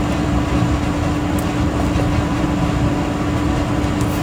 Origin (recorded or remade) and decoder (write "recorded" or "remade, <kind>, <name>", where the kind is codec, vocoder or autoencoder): recorded